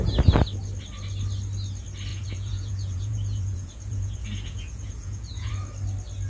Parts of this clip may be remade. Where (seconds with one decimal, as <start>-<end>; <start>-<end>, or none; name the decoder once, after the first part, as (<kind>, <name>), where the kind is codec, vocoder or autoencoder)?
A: 2.1-5.5 (vocoder, Vocos)